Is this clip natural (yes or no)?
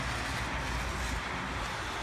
yes